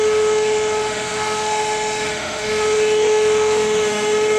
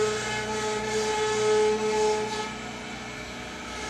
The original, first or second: second